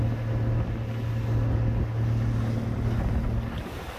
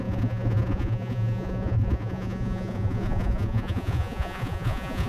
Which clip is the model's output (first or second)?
second